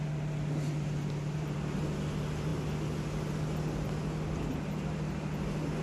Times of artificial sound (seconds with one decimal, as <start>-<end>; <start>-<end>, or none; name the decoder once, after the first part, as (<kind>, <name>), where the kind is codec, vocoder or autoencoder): none